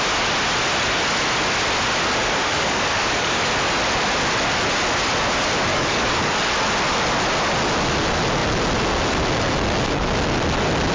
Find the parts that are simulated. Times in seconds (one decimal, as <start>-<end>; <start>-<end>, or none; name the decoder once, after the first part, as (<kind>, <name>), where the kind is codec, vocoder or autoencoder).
2.2-3.4 (codec, DAC); 5.7-6.5